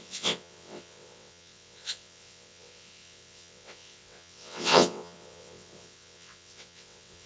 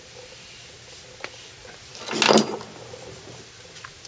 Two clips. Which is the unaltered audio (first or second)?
second